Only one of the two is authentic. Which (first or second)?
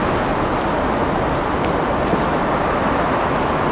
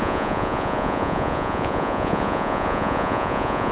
first